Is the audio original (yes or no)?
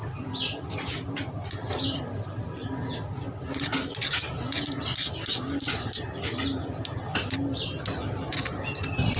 yes